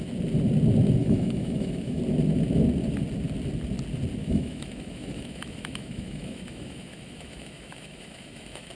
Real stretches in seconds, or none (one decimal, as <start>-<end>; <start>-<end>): 0.0-1.0; 2.0-4.2